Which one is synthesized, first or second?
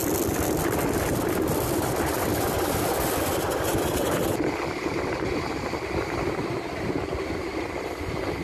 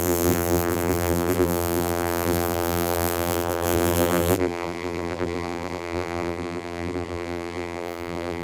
second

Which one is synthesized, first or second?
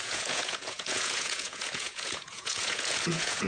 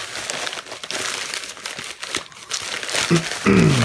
first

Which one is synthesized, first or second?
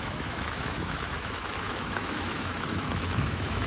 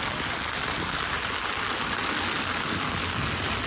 first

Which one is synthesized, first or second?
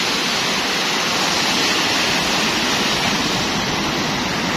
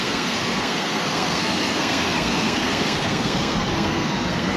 second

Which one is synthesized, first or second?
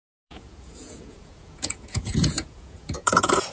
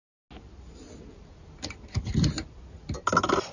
first